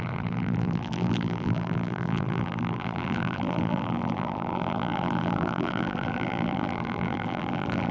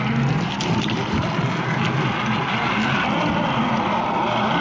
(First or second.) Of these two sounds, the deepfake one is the first